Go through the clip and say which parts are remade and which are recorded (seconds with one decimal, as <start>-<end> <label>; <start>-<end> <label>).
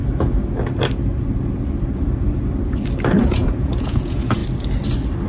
0.0-3.2 recorded; 3.2-4.4 remade; 4.4-5.3 recorded